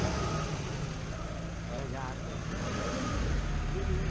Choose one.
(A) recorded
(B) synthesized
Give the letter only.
A